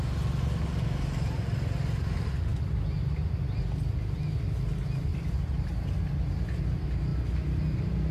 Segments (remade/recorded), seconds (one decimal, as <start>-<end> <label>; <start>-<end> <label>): 0.0-5.1 recorded; 5.1-5.7 remade; 5.7-8.1 recorded